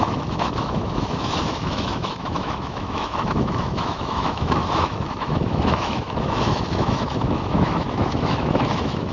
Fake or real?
fake